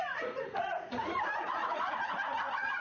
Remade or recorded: remade